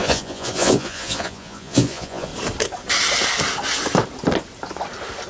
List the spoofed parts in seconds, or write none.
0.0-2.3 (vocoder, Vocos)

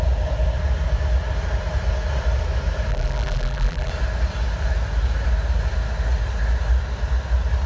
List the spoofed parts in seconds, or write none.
2.9-3.9 (vocoder, BigVGAN v2)

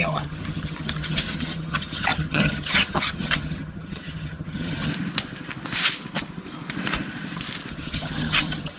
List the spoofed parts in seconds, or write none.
0.0-4.9 (vocoder, HiFi-GAN); 7.7-8.8